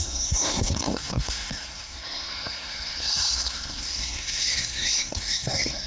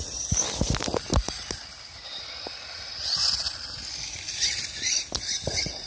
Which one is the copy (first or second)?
first